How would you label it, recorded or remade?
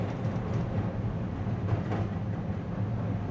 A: recorded